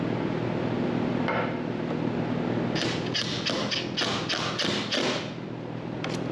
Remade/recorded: recorded